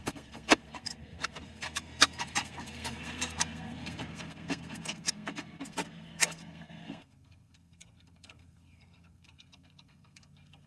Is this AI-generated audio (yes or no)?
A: yes